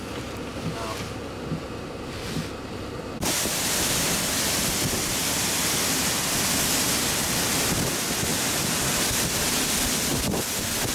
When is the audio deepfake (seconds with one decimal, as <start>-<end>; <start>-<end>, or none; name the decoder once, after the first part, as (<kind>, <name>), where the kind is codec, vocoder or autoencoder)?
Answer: 8.3-9.1 (vocoder, BigVGAN v2)